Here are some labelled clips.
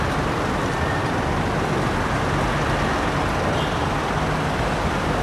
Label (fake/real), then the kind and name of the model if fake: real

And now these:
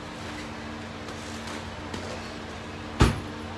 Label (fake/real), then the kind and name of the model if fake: real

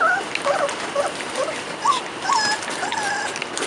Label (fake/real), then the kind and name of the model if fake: fake, vocoder, BigVGAN v2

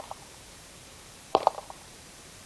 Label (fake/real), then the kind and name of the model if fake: fake, vocoder, BigVGAN v2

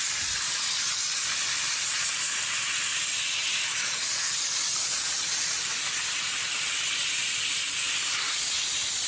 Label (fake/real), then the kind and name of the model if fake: real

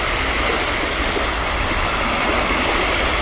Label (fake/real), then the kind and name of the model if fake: real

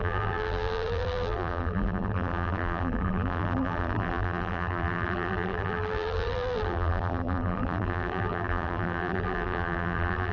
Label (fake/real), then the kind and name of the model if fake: fake, vocoder, BigVGAN v2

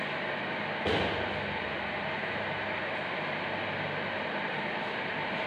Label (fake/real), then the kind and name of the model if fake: real